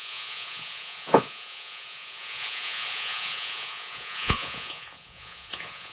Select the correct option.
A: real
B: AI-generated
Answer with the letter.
B